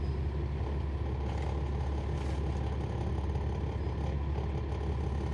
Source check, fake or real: real